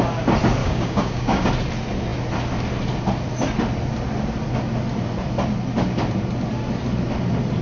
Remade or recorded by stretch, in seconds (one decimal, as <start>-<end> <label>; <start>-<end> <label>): 0.0-0.6 recorded; 0.6-1.5 remade; 1.5-7.6 recorded